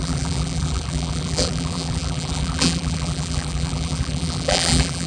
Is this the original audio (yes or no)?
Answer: no